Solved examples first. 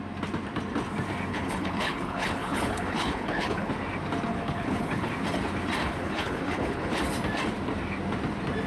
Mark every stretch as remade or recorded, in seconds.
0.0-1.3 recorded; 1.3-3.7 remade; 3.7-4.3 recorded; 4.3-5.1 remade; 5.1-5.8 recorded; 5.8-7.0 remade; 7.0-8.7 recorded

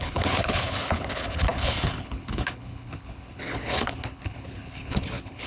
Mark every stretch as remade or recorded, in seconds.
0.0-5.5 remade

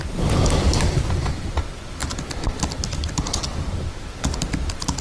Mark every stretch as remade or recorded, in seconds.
0.0-5.0 recorded

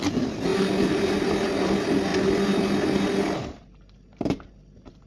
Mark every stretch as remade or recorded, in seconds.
0.0-5.1 recorded

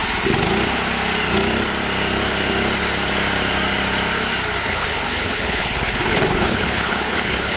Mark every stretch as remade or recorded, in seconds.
0.0-4.6 recorded; 4.6-7.6 remade